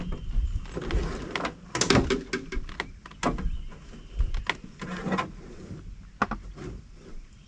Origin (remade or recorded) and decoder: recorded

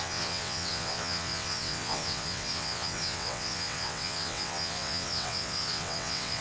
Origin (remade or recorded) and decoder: remade, vocoder, WaveNeXt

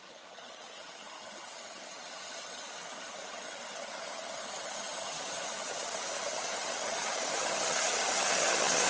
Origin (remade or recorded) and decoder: remade, vocoder, HiFi-GAN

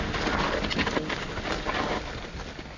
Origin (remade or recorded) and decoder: recorded